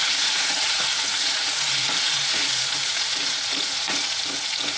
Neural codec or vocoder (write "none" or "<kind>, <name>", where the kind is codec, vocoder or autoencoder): vocoder, Vocos